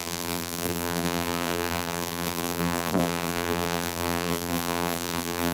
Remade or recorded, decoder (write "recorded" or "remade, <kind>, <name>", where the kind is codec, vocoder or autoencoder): remade, vocoder, BigVGAN v2